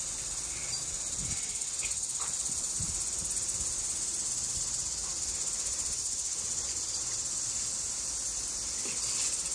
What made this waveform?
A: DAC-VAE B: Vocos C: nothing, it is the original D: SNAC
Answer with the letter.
C